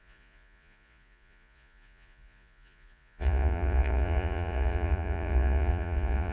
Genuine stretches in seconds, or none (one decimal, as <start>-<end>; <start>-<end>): none